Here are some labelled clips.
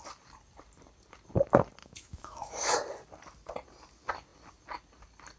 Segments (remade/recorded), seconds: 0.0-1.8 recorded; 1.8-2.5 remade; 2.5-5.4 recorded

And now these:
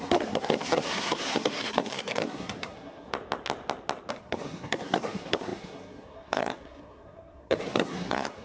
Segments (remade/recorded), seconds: 0.0-3.1 remade; 3.1-4.1 recorded; 4.1-8.4 remade